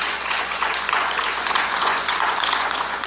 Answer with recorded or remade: remade